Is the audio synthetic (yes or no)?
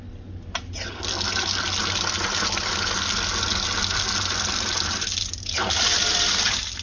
no